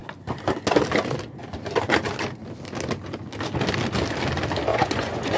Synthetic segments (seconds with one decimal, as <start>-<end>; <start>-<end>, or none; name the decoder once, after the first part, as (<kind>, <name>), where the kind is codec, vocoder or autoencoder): 4.7-5.4 (vocoder, Vocos)